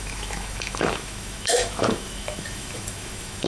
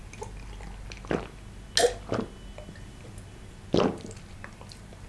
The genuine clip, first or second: second